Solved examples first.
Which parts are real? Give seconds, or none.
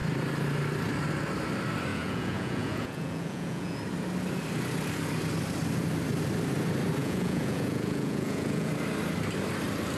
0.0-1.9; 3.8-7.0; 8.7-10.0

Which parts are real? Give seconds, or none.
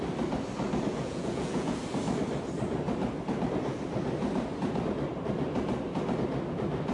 0.0-0.9; 1.8-6.9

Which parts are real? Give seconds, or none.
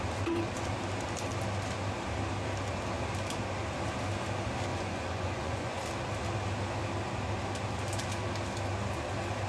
0.0-4.7; 5.8-9.5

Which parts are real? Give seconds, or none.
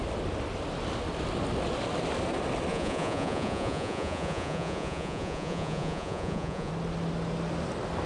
0.0-2.7; 6.7-8.1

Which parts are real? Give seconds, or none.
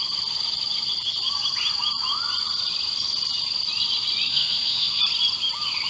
0.0-4.3; 5.0-5.9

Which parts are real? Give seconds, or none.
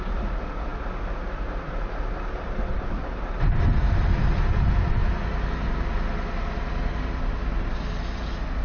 0.0-8.6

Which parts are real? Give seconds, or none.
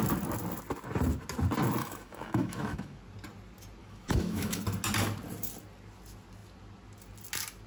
0.0-1.8; 3.0-3.8; 4.6-7.7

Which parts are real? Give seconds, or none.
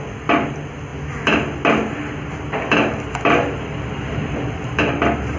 0.0-5.4